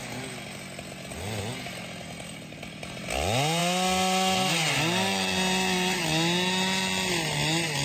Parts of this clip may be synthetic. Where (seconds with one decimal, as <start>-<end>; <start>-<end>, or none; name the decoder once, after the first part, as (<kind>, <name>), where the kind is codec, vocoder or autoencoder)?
none